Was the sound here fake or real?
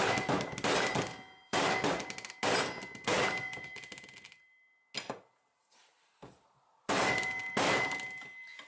real